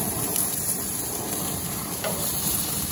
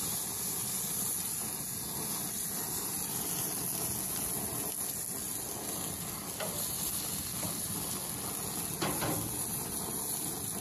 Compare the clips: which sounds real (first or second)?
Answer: second